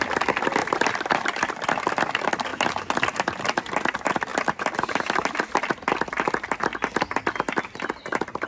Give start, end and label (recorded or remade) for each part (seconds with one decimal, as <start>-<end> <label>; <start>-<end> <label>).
0.0-0.6 recorded; 0.6-1.5 remade; 1.5-8.5 recorded